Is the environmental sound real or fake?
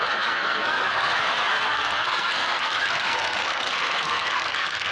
fake